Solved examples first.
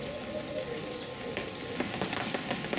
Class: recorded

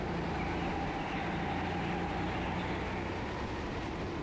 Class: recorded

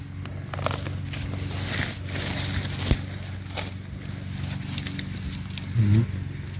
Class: recorded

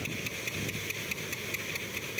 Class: recorded